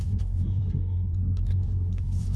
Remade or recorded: remade